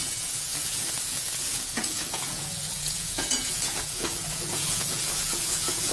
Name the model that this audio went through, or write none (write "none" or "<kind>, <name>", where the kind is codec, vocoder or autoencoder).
vocoder, Vocos